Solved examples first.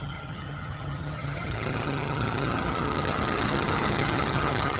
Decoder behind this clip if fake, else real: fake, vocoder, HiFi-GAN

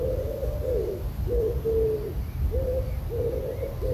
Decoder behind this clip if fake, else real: real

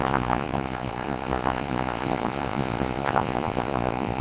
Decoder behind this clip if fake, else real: fake, vocoder, Vocos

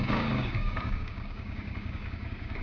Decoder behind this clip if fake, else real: fake, codec, DAC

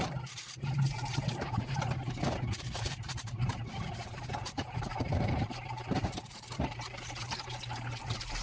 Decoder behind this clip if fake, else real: fake, vocoder, BigVGAN v2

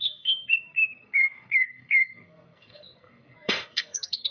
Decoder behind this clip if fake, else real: fake, codec, SNAC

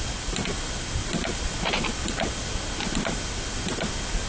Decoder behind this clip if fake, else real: real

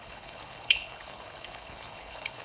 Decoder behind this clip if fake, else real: fake, codec, HILCodec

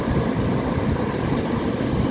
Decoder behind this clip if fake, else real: real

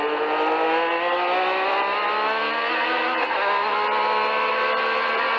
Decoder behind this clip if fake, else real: real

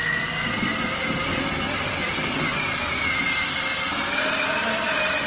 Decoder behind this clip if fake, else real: real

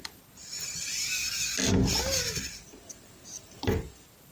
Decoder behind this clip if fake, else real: real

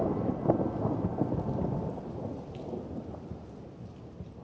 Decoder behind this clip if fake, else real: real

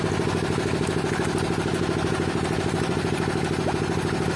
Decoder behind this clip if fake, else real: real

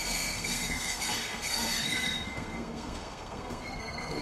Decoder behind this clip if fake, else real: fake, codec, SNAC